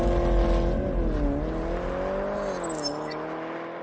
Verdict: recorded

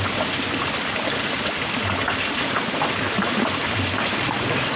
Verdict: recorded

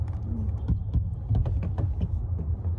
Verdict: recorded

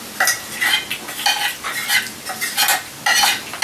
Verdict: recorded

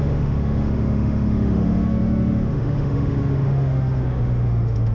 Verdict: remade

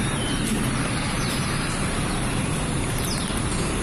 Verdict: remade